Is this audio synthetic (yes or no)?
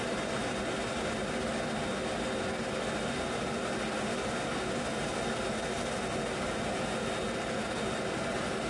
no